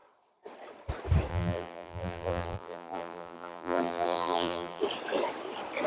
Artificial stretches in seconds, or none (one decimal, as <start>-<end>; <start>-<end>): 1.3-4.8